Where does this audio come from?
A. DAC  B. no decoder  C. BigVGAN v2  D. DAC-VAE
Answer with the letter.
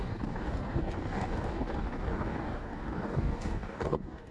A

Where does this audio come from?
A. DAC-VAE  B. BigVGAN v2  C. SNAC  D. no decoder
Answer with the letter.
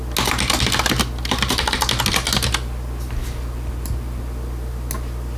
D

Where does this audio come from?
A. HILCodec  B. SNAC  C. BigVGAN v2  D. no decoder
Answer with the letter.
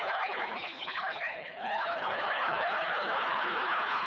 A